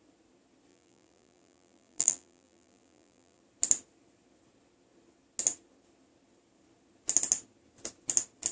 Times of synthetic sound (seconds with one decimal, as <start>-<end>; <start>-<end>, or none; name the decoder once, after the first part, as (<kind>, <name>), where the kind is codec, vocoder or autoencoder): 0.7-3.4 (vocoder, BigVGAN v2)